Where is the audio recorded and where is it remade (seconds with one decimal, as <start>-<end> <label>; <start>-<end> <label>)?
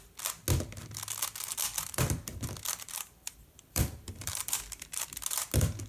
0.0-1.6 recorded; 1.6-5.1 remade; 5.1-5.9 recorded